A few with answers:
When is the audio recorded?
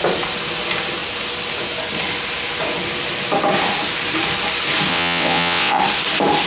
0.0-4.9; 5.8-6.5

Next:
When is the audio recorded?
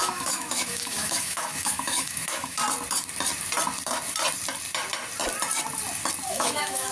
2.6-6.3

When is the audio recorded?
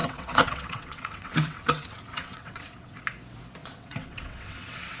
3.0-3.6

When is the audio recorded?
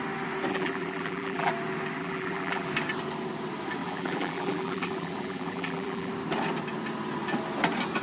0.0-0.5; 1.5-2.0; 2.7-3.8; 6.1-8.0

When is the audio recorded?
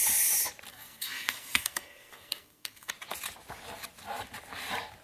0.0-0.7; 2.9-5.0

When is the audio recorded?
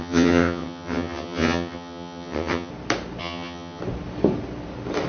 2.7-3.2; 3.8-5.1